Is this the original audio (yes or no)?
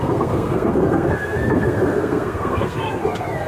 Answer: no